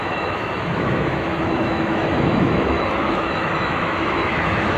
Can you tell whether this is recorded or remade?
remade